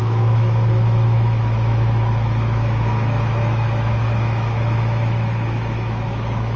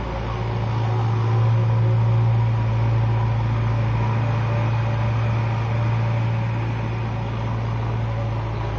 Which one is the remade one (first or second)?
first